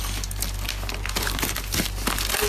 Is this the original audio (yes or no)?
yes